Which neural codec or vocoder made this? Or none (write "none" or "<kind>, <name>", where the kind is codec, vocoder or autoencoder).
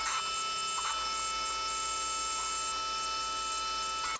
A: none